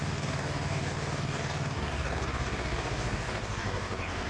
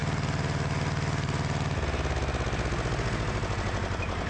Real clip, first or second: second